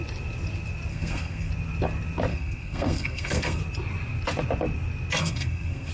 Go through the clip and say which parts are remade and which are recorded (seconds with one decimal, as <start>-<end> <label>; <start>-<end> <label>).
0.0-0.9 recorded; 0.9-1.5 remade; 1.5-2.3 recorded; 2.3-3.6 remade; 3.6-5.2 recorded; 5.2-5.9 remade